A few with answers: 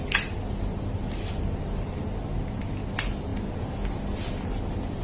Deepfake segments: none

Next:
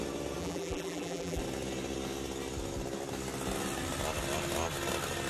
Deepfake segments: 0.4-1.4

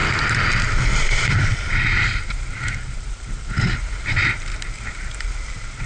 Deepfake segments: 0.0-3.5; 4.5-5.9